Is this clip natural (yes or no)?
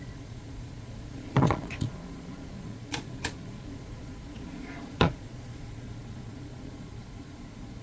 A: no